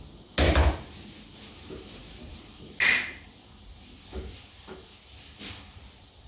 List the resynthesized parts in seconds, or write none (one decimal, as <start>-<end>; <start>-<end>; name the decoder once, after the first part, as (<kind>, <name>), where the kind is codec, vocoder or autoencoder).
none